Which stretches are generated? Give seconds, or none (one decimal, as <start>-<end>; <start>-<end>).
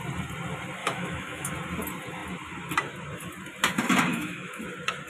0.8-1.5; 4.1-4.6